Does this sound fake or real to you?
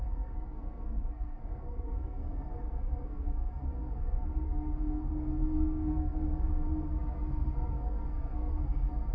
fake